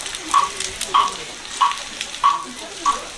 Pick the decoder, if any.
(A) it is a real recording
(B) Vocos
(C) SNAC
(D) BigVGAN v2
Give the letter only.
D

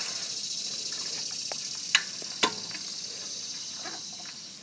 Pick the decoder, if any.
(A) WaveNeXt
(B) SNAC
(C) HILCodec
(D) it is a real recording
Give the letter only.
D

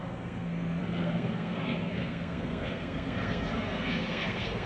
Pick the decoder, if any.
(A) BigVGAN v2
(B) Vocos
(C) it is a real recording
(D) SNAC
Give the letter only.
D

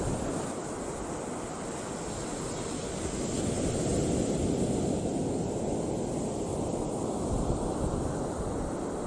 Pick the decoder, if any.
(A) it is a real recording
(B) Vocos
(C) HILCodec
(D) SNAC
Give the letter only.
A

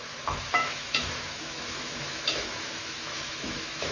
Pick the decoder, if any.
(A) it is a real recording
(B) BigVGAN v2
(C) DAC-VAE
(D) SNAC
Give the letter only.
C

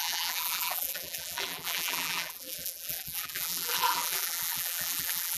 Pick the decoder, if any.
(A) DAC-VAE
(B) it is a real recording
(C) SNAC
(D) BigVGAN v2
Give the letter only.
D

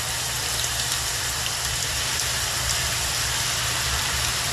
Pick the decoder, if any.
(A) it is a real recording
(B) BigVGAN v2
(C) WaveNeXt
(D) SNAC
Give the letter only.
B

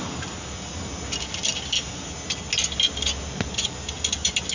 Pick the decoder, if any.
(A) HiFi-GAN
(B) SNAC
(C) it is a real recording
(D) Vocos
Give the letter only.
C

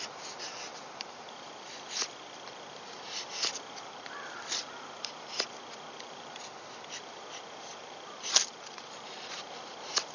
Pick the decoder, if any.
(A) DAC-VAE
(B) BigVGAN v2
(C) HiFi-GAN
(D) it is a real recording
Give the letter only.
B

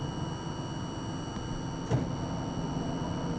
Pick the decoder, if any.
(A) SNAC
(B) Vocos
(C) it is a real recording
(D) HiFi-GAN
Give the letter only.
C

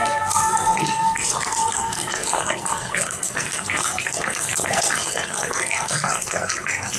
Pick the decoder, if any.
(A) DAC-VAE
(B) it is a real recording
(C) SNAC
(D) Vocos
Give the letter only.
C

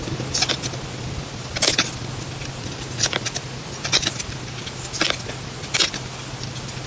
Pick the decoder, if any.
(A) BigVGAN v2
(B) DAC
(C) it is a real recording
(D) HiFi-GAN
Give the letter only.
C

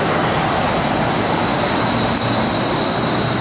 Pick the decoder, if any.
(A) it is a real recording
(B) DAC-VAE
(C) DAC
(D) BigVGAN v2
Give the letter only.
A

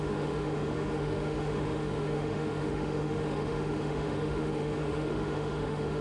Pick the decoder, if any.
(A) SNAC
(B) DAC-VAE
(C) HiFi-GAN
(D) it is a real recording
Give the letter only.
B